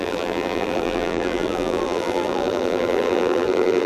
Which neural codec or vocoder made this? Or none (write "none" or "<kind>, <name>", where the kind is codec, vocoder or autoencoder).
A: vocoder, BigVGAN v2